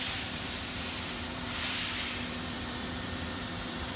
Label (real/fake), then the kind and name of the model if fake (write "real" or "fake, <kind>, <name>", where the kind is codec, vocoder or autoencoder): fake, vocoder, BigVGAN v2